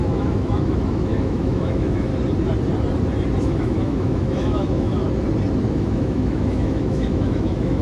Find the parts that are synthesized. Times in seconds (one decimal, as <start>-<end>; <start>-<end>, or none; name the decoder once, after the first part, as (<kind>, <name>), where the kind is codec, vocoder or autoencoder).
0.0-2.1 (autoencoder, DAC-VAE); 3.4-4.9; 5.7-7.8